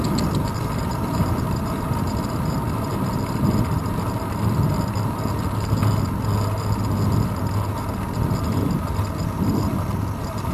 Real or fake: real